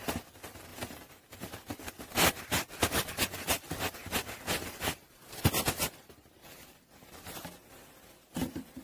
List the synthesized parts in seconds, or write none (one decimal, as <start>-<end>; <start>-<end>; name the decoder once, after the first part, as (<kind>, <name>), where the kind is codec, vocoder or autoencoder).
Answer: 0.7-1.5 (vocoder, BigVGAN v2)